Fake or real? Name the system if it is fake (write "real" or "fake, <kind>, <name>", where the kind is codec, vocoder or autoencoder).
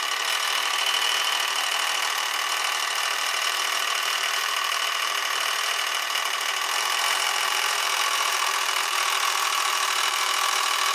fake, vocoder, BigVGAN v2